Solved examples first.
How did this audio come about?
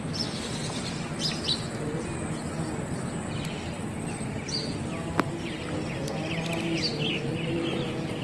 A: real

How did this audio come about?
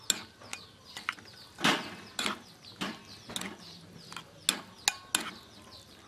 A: real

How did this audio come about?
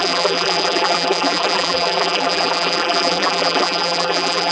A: fake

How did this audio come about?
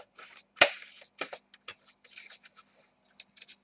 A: real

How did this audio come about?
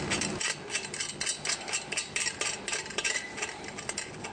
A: real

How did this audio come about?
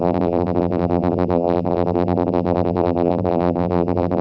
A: fake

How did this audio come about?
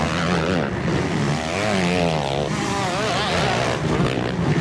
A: real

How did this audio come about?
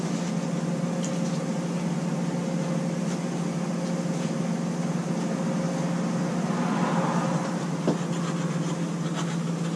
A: real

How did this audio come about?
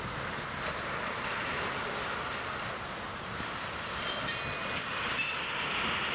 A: real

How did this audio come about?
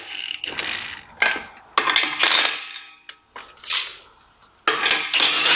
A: real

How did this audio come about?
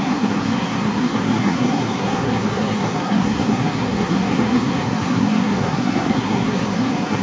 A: fake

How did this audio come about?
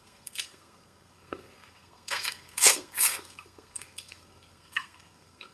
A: fake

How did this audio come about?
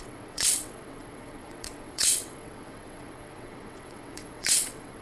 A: fake